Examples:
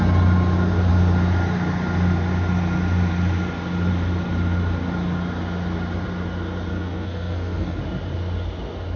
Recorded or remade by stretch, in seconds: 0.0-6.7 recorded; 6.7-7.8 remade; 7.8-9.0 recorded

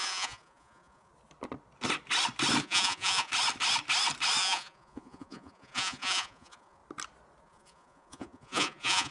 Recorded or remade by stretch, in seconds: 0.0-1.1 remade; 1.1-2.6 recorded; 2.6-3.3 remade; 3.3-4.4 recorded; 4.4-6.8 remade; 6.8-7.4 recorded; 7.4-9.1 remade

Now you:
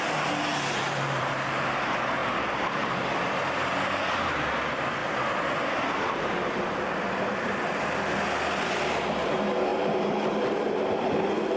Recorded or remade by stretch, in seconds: 0.0-0.5 recorded; 0.5-1.3 remade; 1.3-2.2 recorded; 2.2-4.1 remade; 4.1-5.0 recorded; 5.0-7.2 remade; 7.2-9.7 recorded; 9.7-10.3 remade; 10.3-11.6 recorded

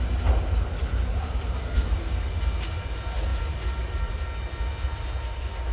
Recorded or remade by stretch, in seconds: 0.0-1.6 recorded; 1.6-2.3 remade; 2.3-5.7 recorded

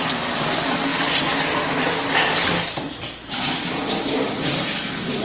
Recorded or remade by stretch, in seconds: 0.0-5.2 recorded